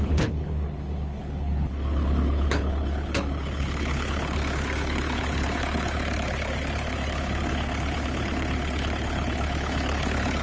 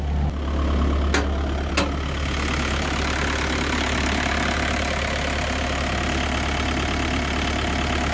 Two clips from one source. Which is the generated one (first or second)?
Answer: first